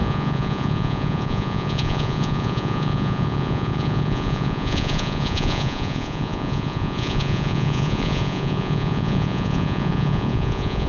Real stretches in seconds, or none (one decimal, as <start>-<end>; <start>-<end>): none